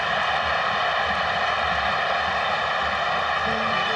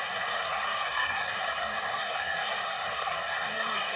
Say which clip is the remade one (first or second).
second